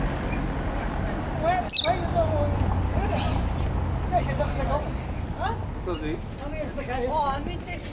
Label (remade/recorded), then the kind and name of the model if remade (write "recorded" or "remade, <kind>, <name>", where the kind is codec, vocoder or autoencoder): recorded